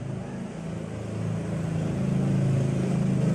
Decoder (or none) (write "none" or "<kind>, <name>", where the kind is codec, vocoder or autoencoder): none